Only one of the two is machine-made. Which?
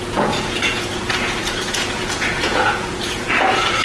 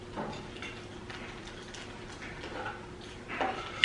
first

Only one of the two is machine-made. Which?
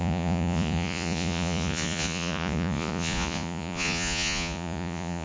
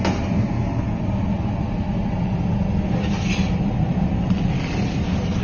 first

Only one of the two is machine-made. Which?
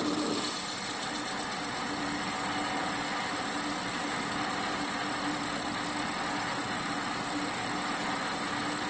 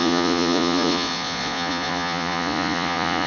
second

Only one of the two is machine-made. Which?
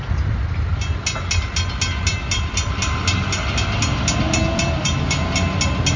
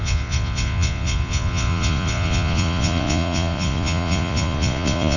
second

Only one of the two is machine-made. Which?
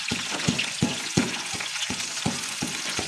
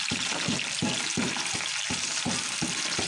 first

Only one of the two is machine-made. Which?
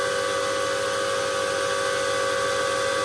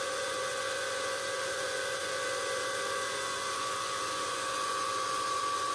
second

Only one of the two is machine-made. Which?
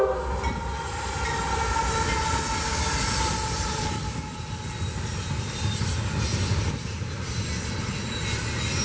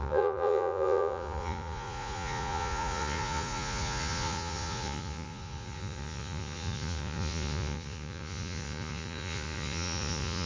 second